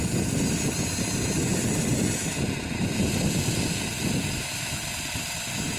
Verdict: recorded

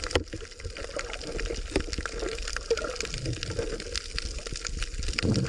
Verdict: recorded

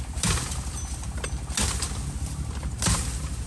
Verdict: recorded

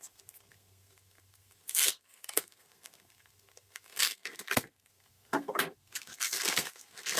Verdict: remade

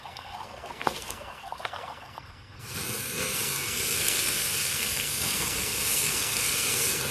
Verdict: remade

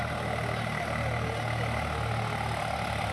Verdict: recorded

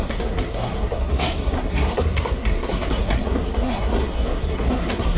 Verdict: remade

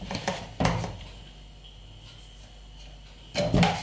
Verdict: recorded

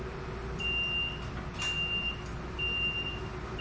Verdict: recorded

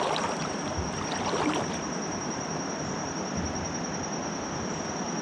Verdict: recorded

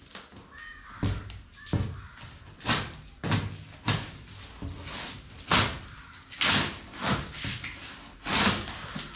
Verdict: recorded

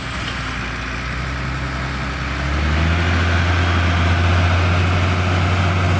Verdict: recorded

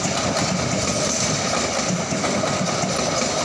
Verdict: recorded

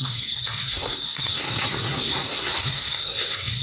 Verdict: remade